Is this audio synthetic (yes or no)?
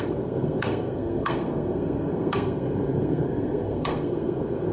yes